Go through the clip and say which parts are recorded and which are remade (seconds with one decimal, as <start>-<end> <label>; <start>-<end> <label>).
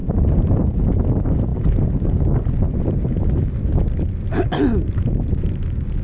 0.0-0.8 remade; 0.8-6.0 recorded